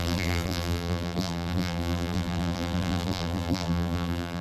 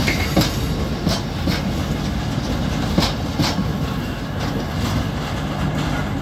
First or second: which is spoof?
first